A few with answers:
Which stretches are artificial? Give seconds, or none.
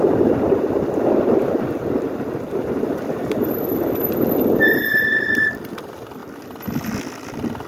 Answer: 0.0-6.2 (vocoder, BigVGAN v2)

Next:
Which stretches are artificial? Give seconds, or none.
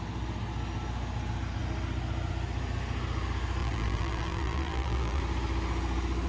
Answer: 3.6-5.2 (vocoder, BigVGAN v2)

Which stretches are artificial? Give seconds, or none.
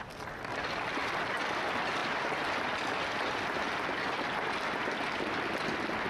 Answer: none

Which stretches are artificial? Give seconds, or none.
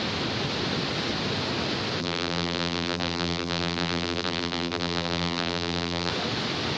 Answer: 2.0-6.1 (vocoder, BigVGAN v2)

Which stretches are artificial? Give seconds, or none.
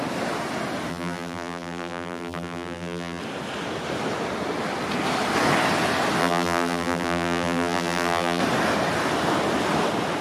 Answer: 0.9-3.2 (vocoder, BigVGAN v2); 6.2-8.4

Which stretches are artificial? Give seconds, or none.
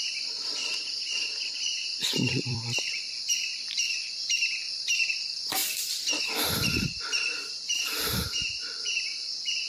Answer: 0.0-9.7 (vocoder, BigVGAN v2)